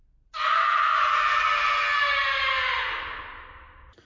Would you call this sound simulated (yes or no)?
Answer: no